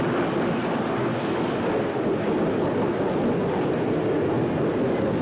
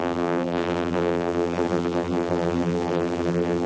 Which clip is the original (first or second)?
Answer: first